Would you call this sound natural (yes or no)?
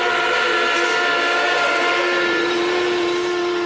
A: no